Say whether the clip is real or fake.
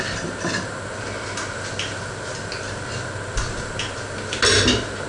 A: real